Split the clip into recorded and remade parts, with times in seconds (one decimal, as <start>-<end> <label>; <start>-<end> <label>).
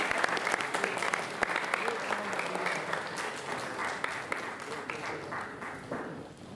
0.0-6.5 recorded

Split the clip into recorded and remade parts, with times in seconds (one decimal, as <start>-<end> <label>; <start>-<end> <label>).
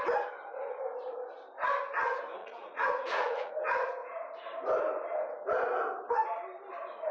0.0-2.4 recorded; 2.4-3.5 remade; 3.5-7.1 recorded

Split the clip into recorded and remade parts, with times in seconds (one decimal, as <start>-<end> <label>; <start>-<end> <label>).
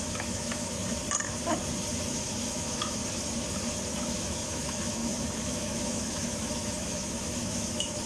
0.0-0.8 remade; 0.8-2.1 recorded; 2.1-3.0 remade; 3.0-4.0 recorded; 4.0-8.1 remade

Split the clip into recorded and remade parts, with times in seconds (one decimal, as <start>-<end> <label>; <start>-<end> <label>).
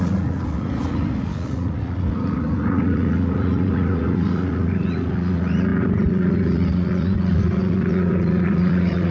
0.0-9.1 remade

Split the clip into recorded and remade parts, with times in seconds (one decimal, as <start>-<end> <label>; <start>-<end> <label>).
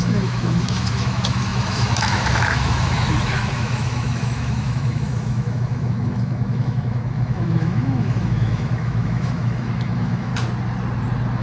0.0-10.3 remade; 10.3-11.4 recorded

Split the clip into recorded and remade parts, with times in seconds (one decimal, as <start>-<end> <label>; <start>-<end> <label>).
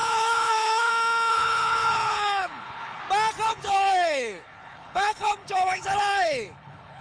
0.0-0.9 remade; 0.9-1.3 recorded; 1.3-3.0 remade; 3.0-3.5 recorded; 3.5-7.0 remade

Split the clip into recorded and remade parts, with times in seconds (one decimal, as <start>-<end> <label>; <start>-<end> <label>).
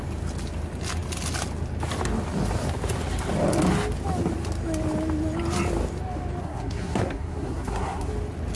0.0-6.4 recorded; 6.4-8.1 remade; 8.1-8.5 recorded